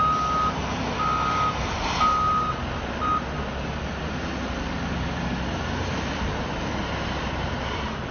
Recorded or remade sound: recorded